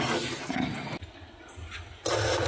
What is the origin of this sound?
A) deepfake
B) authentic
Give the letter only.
B